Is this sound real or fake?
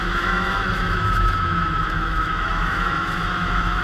fake